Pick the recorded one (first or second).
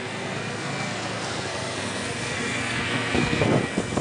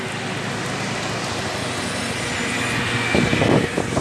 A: second